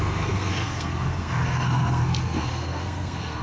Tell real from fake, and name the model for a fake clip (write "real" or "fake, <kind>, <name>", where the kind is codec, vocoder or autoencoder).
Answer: fake, codec, SNAC